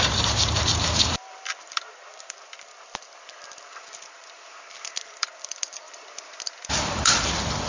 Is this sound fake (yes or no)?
yes